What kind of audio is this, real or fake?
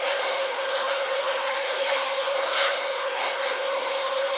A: fake